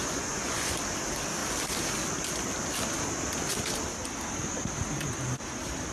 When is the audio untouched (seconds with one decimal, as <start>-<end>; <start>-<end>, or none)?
0.8-5.9